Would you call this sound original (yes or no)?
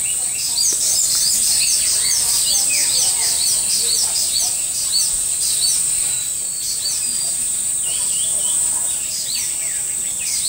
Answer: yes